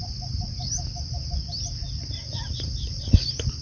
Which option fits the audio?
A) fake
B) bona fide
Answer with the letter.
B